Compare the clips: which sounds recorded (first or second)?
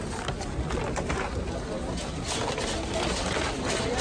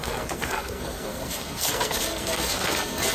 first